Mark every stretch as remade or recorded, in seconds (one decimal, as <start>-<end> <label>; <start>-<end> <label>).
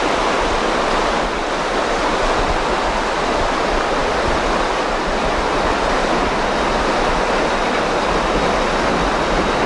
0.0-9.7 recorded